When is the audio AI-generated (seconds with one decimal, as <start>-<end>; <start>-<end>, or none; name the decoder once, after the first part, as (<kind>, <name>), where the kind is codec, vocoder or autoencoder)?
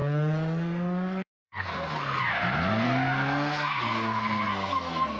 0.0-5.2 (codec, SNAC)